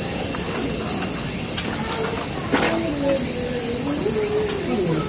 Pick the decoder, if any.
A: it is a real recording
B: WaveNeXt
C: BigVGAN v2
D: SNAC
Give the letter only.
A